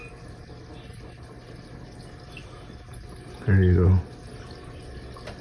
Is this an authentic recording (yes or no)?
yes